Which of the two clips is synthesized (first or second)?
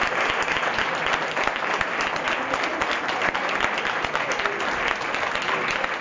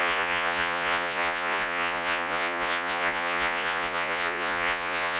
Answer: second